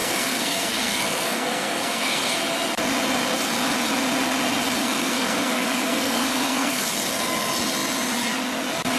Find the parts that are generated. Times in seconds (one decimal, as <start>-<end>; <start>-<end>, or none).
0.0-2.4; 4.8-6.9